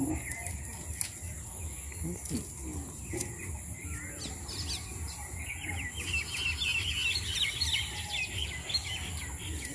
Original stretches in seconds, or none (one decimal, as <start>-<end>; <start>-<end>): 0.0-9.7